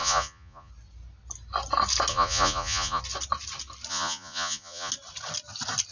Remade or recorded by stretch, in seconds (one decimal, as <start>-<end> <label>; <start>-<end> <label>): 0.0-0.7 remade; 0.7-2.1 recorded; 2.1-3.0 remade; 3.0-3.9 recorded; 3.9-4.9 remade; 4.9-5.9 recorded